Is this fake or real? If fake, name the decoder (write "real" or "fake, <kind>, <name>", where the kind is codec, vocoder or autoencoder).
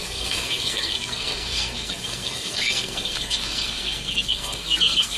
fake, codec, SNAC